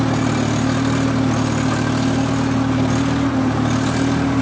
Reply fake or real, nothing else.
real